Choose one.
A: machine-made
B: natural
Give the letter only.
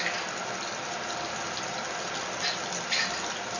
B